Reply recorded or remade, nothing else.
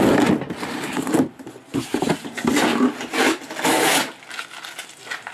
recorded